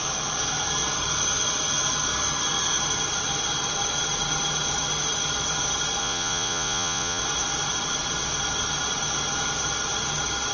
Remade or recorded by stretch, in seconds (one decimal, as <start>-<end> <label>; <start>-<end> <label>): 0.0-6.0 recorded; 6.0-7.2 remade; 7.2-10.5 recorded